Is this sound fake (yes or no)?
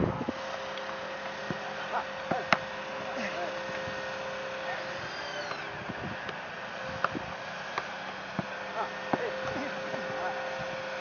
no